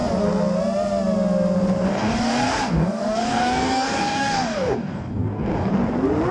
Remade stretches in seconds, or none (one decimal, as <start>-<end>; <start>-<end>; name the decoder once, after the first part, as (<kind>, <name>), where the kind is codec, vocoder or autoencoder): 1.9-5.7 (codec, DAC)

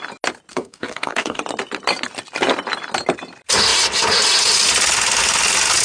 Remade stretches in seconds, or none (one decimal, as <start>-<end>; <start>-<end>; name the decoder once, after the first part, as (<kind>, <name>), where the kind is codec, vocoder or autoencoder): 0.5-1.4 (codec, DAC)

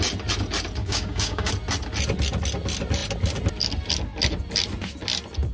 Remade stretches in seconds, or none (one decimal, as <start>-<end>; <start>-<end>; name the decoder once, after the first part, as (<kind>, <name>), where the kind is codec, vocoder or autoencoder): 0.8-1.5 (codec, DAC)

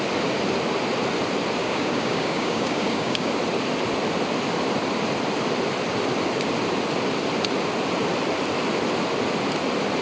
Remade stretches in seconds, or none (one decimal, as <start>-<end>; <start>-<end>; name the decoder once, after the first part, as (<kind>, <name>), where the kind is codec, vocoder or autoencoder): 1.6-3.3 (codec, DAC)

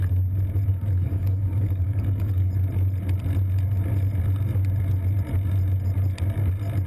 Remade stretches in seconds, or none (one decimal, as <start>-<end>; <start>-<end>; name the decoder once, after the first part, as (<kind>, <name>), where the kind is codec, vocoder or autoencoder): 0.7-2.5 (codec, DAC)

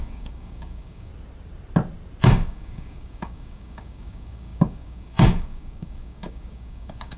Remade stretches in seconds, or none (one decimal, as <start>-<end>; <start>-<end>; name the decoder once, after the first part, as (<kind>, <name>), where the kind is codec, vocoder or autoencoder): 0.0-1.1 (codec, DAC); 2.2-7.2

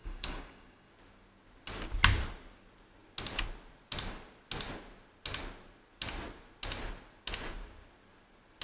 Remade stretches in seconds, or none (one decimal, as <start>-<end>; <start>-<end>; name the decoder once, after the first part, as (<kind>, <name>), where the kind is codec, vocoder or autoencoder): 0.0-0.9 (codec, DAC)

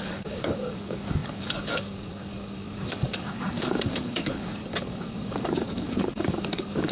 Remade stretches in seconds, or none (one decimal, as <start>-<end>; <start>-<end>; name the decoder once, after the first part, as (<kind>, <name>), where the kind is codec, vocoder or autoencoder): 0.0-6.9 (codec, DAC)